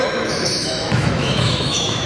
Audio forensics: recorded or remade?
remade